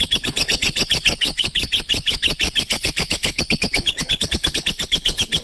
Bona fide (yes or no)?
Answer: no